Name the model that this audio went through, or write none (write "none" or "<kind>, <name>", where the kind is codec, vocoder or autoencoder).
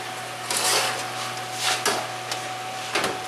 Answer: none